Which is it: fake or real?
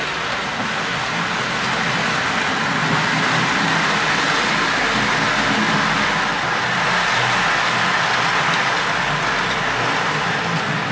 real